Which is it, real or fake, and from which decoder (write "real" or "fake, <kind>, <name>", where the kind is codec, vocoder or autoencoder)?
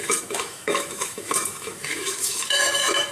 fake, autoencoder, DAC-VAE